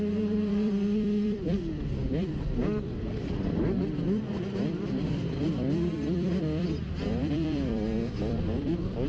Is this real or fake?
fake